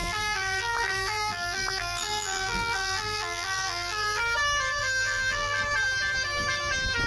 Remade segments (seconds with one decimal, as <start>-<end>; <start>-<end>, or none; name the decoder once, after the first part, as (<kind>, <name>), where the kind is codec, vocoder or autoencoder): 0.0-4.2 (vocoder, BigVGAN v2); 4.8-5.6